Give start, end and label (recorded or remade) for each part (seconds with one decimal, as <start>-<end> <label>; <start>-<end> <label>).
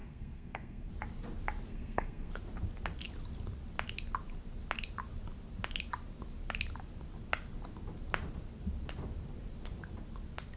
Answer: 0.0-0.9 remade; 0.9-1.7 recorded; 1.7-2.3 remade; 2.3-10.6 recorded